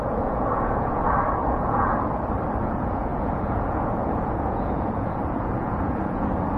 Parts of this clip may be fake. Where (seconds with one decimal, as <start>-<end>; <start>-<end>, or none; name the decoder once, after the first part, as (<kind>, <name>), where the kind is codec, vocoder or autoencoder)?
0.0-1.0 (vocoder, Vocos); 1.5-1.9; 2.6-6.6